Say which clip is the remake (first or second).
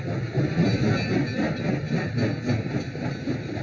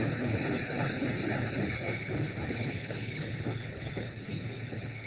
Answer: second